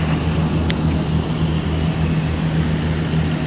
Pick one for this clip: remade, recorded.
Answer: recorded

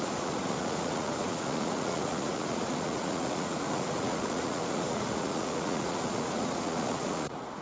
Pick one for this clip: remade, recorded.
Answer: remade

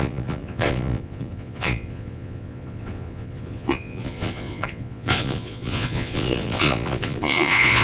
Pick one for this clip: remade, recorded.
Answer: remade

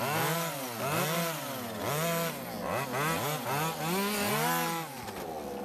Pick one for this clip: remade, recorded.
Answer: recorded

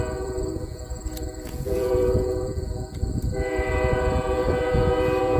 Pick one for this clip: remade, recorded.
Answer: remade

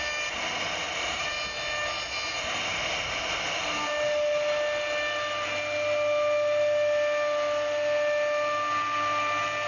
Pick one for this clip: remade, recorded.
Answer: recorded